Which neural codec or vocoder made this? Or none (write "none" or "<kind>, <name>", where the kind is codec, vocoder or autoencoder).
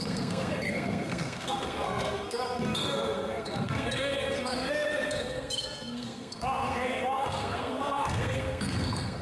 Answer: codec, SNAC